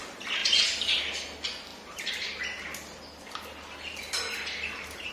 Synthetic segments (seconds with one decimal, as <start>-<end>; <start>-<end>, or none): 0.4-1.0; 1.7-5.1